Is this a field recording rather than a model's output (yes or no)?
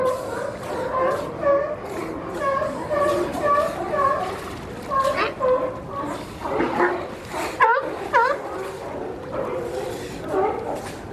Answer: yes